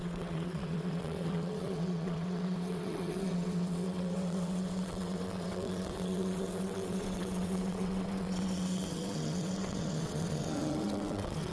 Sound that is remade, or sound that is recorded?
remade